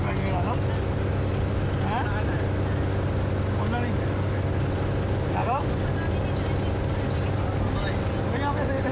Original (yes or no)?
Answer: yes